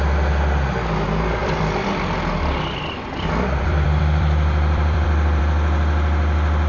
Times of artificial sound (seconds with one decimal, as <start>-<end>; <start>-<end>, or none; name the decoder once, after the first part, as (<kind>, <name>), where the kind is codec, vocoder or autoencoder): 1.4-5.4 (vocoder, BigVGAN v2)